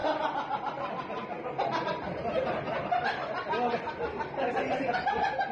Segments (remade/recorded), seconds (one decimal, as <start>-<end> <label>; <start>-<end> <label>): 0.0-5.5 recorded